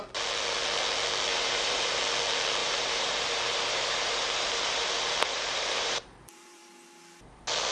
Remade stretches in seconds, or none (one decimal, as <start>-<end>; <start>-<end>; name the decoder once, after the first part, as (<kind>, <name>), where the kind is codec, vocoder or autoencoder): 1.3-2.0 (vocoder, BigVGAN v2); 2.6-6.7